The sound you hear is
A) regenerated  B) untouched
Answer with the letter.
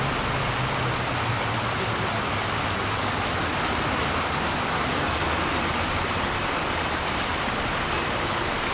B